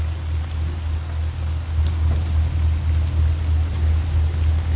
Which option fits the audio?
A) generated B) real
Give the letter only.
B